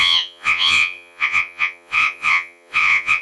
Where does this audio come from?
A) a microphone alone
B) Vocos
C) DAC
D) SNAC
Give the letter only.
B